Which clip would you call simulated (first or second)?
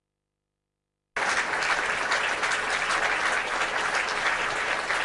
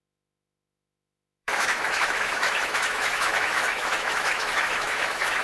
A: second